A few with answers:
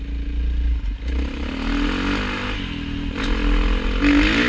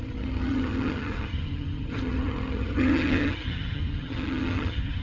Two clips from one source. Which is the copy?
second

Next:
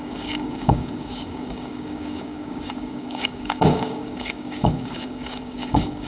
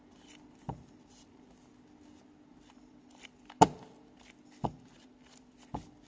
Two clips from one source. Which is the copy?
first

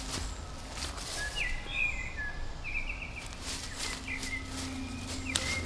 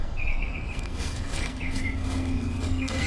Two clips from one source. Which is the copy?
second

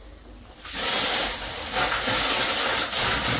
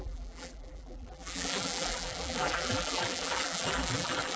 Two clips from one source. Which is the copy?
second